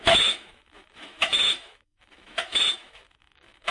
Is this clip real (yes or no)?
no